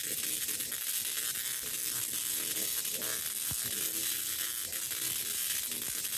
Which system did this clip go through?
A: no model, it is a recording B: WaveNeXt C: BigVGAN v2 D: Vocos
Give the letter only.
A